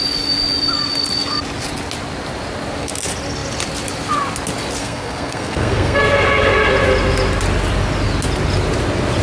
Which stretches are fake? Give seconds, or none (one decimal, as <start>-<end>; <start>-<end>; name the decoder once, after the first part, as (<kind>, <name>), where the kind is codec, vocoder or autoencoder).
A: 4.8-6.0 (codec, SNAC)